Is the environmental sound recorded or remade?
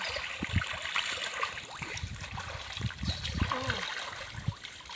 recorded